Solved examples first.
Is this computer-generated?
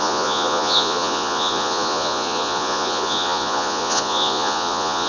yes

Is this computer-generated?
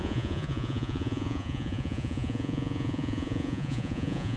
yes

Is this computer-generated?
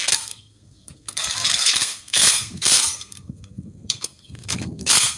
yes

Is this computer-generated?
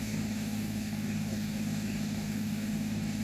yes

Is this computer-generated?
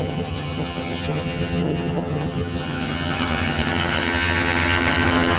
yes